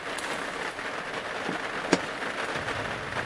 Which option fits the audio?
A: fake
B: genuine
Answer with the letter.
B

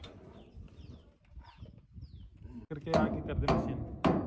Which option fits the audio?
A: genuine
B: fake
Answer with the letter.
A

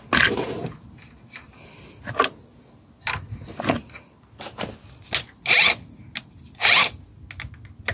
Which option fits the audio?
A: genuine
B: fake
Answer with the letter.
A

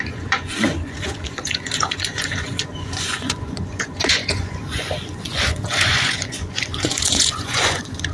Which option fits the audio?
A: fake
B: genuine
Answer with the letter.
A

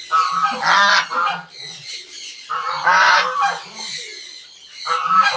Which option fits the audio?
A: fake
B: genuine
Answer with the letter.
B